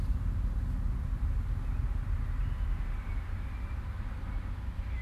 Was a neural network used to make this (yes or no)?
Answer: no